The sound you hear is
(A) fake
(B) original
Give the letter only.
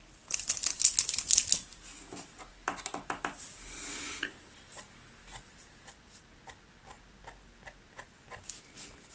B